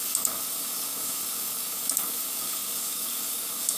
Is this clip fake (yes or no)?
yes